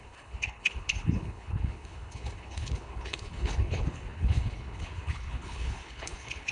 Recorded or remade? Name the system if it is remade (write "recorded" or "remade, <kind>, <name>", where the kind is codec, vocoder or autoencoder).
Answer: remade, codec, HILCodec